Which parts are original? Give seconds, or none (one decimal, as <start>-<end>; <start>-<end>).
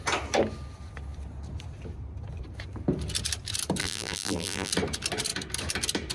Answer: 0.0-3.8; 4.7-6.1